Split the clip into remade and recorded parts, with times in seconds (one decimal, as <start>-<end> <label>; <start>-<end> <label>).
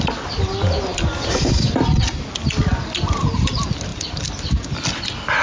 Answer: 0.0-0.9 recorded; 0.9-1.8 remade; 1.8-3.9 recorded; 3.9-5.0 remade; 5.0-5.4 recorded